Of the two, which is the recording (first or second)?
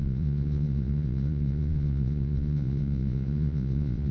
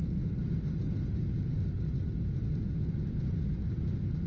second